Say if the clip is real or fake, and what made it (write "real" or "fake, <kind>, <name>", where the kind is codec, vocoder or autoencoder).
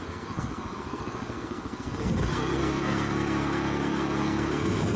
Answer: fake, codec, SNAC